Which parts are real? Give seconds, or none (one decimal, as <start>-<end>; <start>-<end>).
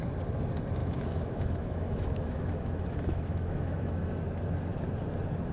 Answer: 0.0-0.8; 4.1-5.5